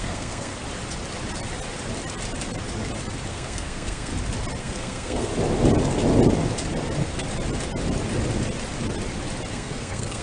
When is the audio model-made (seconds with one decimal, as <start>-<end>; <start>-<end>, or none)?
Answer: 0.0-0.5; 3.3-4.1; 4.6-5.3; 9.5-10.2